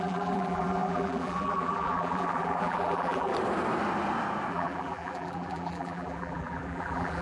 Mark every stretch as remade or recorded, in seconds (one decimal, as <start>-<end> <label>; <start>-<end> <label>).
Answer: 0.0-3.3 remade; 3.3-4.5 recorded; 4.5-7.2 remade